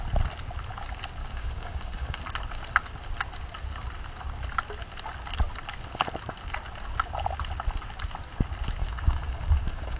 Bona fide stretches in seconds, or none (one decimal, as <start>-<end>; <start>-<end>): 0.0-1.2; 2.2-8.8